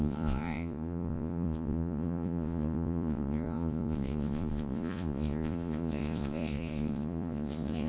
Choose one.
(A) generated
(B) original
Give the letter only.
A